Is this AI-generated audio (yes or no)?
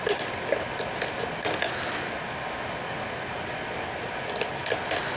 no